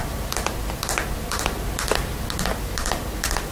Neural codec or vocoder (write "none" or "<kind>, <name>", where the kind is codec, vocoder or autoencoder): none